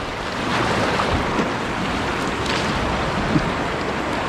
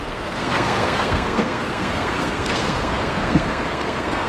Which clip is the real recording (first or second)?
first